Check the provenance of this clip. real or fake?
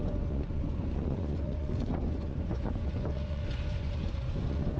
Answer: fake